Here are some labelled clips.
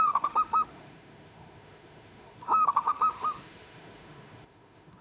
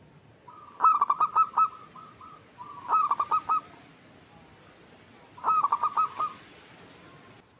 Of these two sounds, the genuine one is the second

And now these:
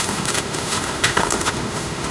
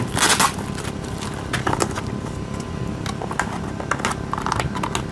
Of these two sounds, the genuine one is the second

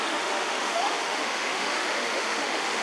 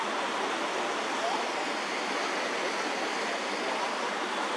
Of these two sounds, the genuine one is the second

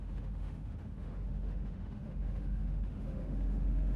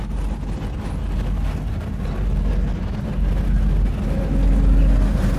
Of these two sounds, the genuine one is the second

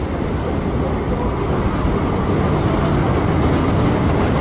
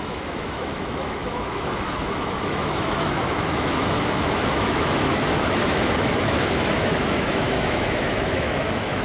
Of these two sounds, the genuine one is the first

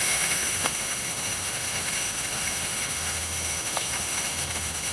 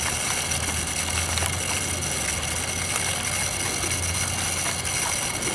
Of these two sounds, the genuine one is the second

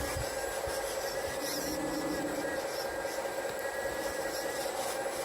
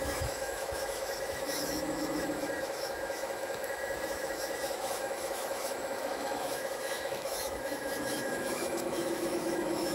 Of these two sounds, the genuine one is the first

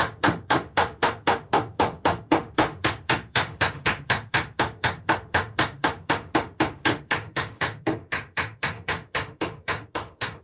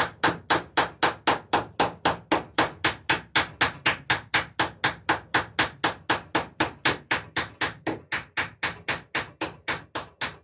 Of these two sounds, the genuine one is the second